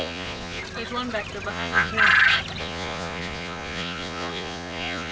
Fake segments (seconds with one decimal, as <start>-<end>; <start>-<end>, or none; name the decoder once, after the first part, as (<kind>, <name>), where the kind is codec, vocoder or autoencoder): 0.0-0.6 (vocoder, Vocos); 1.5-1.9; 2.6-5.1